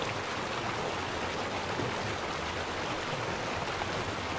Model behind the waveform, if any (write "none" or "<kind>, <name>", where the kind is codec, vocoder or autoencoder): none